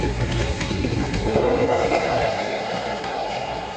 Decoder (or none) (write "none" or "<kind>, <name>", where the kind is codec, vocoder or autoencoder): codec, SNAC